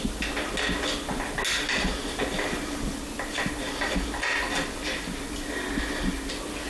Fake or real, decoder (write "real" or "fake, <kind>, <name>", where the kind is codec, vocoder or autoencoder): real